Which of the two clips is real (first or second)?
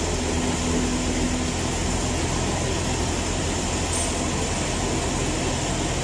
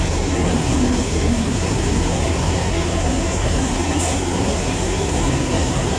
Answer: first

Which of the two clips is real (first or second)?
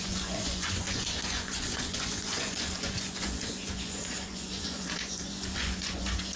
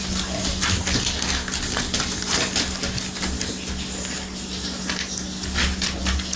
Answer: second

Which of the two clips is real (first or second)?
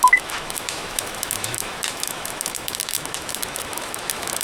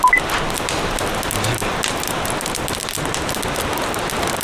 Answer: second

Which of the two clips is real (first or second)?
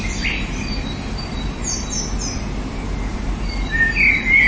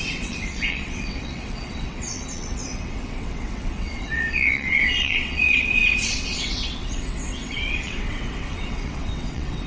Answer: first